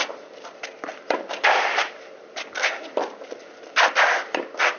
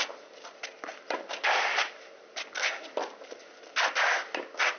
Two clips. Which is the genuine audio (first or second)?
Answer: second